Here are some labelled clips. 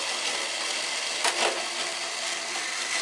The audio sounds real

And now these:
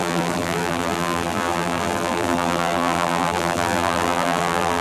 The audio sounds fake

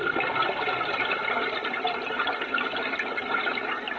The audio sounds real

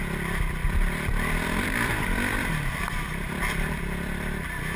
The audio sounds fake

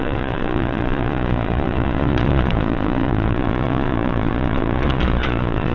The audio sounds fake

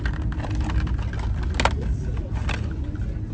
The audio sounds real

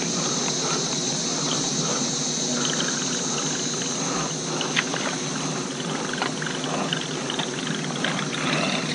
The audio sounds real